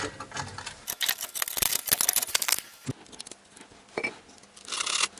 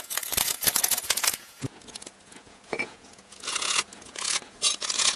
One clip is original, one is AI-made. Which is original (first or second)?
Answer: first